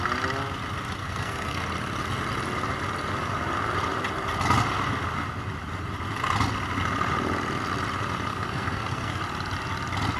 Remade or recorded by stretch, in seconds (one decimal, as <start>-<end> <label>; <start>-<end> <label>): 0.0-1.0 recorded; 1.0-1.6 remade; 1.6-8.3 recorded; 8.3-9.2 remade; 9.2-10.2 recorded